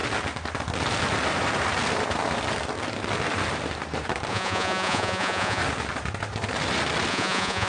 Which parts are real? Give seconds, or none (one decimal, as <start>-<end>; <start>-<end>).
0.0-4.3; 5.6-7.1